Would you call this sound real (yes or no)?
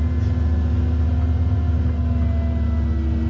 yes